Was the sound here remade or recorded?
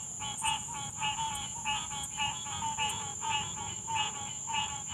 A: remade